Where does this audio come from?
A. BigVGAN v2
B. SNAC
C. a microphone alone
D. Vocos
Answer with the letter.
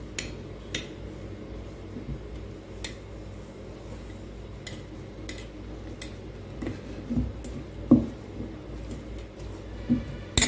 C